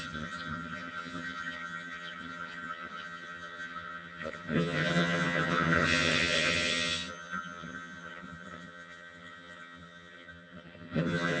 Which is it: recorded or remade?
remade